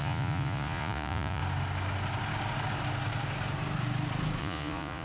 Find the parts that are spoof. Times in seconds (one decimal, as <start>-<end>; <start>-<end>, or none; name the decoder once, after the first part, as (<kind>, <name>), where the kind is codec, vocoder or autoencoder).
0.0-1.4 (vocoder, Vocos); 4.4-5.0